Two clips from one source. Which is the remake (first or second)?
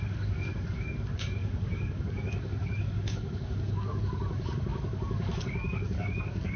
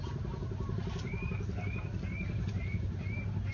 first